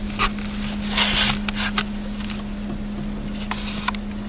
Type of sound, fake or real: real